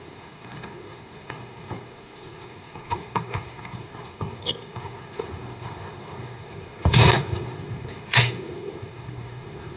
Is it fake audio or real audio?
fake